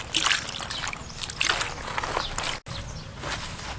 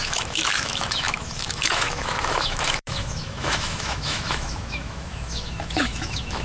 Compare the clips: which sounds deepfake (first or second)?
second